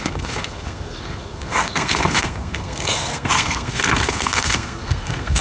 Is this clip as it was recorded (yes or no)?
no